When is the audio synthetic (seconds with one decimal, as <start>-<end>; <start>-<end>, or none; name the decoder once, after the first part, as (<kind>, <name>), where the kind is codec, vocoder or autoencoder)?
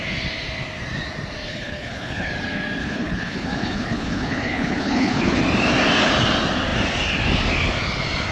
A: 1.5-2.3 (codec, HILCodec); 2.8-5.4